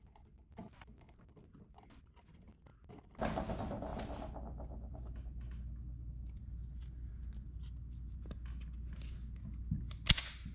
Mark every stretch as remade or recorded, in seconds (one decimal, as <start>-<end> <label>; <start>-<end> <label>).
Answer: 0.0-10.5 recorded